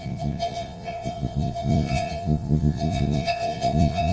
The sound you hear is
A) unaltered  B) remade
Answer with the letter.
B